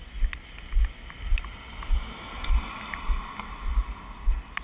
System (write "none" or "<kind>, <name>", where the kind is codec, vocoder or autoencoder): none